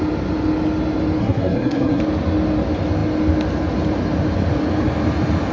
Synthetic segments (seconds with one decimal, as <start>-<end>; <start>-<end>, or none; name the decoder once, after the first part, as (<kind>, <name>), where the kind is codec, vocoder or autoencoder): 1.2-2.0 (codec, SNAC)